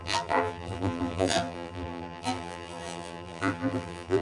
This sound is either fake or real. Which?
fake